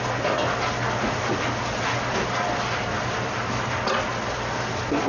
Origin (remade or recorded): recorded